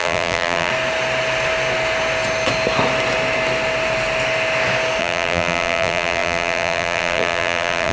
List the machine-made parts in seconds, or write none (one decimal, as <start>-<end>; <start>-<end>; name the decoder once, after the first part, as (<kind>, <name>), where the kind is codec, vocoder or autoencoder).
0.0-0.7 (vocoder, BigVGAN v2); 5.0-7.9